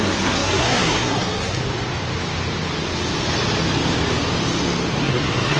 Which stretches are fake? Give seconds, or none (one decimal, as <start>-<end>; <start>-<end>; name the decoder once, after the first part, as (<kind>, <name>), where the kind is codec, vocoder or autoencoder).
0.0-1.6 (codec, SNAC); 5.0-5.6